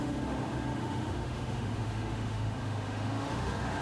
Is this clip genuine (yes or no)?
no